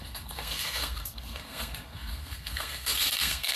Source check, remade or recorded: remade